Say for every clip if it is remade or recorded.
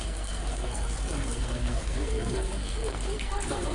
remade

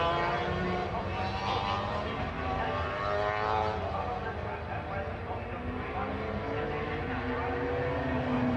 recorded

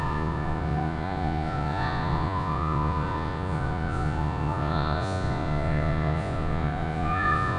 remade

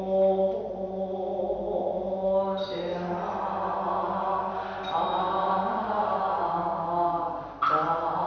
recorded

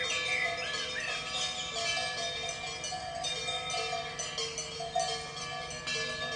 recorded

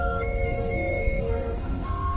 remade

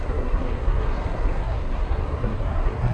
remade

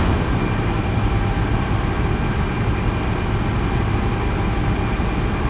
recorded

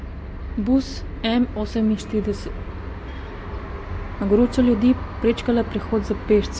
recorded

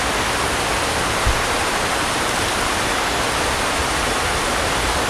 recorded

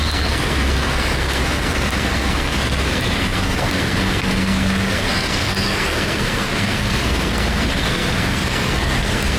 remade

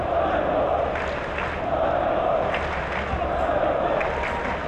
recorded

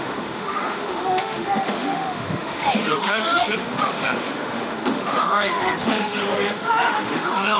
remade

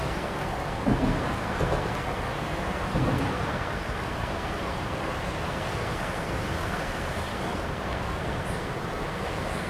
remade